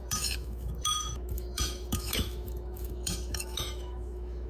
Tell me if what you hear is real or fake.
fake